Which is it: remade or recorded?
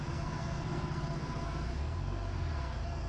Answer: remade